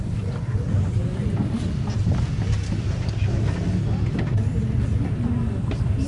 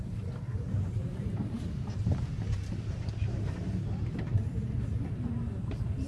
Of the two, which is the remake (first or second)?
second